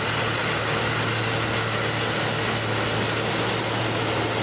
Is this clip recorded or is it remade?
recorded